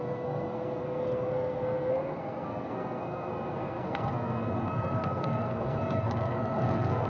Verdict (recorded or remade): remade